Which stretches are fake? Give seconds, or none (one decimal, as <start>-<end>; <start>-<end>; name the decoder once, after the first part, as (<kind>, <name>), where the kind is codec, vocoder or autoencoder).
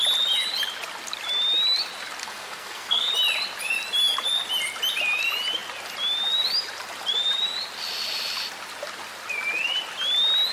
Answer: 2.2-3.1 (codec, SNAC)